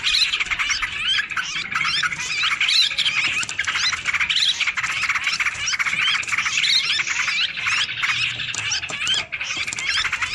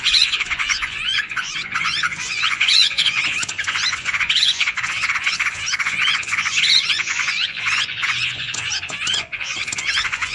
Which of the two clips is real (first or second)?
first